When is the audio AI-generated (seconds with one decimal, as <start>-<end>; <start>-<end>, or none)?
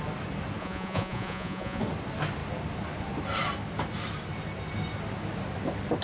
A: 0.6-1.8